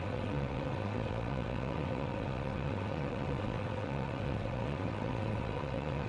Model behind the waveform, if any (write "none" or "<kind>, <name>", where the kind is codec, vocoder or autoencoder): vocoder, WaveNeXt